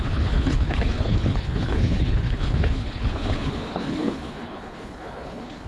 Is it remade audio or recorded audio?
remade